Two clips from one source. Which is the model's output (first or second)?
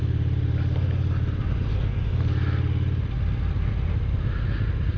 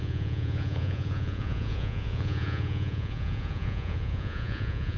second